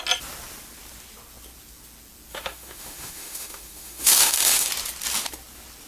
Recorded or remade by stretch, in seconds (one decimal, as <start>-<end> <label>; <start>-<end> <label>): 0.0-2.3 recorded; 2.3-4.7 remade; 4.7-5.9 recorded